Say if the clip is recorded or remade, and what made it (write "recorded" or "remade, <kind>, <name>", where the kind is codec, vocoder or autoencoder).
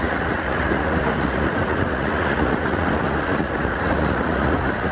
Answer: remade, vocoder, Vocos